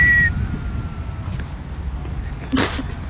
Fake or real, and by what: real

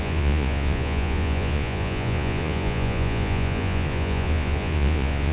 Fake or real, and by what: fake, vocoder, Vocos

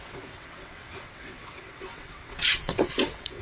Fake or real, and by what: fake, vocoder, WaveNeXt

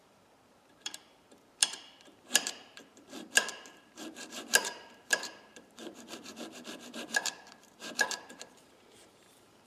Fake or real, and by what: fake, vocoder, BigVGAN v2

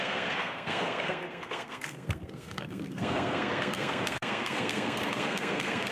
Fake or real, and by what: fake, codec, SNAC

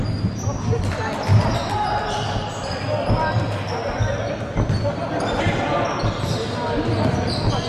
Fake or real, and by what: real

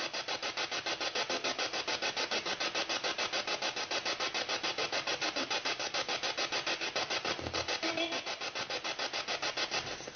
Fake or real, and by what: real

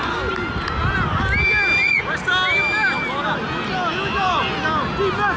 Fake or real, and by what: real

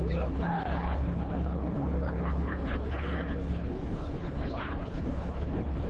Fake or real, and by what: fake, codec, HILCodec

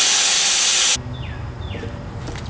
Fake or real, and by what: real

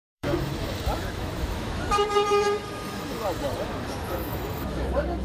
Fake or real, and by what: fake, autoencoder, DAC-VAE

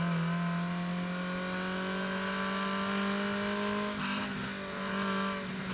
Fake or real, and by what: real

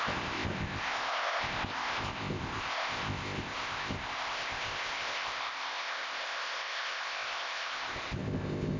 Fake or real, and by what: fake, codec, ZipCodec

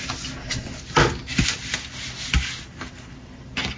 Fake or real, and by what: real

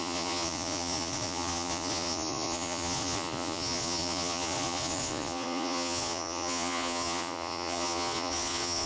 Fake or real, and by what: fake, vocoder, Vocos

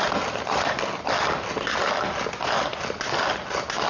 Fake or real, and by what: real